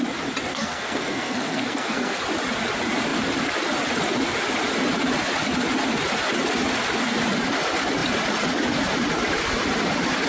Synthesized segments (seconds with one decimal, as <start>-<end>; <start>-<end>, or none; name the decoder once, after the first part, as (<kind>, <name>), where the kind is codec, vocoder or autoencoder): 0.5-2.2 (codec, SNAC)